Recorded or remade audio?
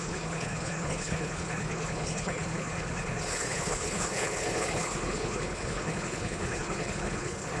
remade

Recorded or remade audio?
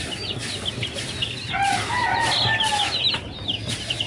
recorded